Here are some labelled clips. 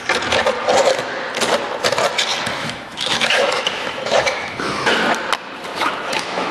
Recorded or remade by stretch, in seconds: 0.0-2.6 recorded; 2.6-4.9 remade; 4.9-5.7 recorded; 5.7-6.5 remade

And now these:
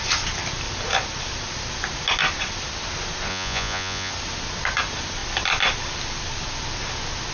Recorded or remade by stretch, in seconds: 0.0-3.3 recorded; 3.3-4.1 remade; 4.1-7.3 recorded